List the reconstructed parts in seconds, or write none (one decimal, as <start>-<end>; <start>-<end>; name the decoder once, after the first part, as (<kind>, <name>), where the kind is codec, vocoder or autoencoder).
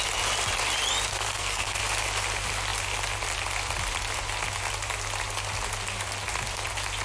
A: 1.1-1.8 (codec, SNAC)